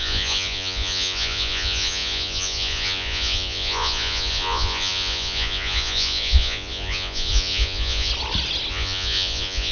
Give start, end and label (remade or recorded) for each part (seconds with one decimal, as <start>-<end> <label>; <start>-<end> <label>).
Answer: 0.0-8.1 remade; 8.1-8.7 recorded; 8.7-9.7 remade